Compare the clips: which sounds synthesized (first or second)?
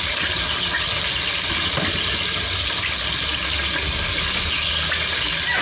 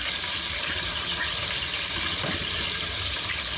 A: second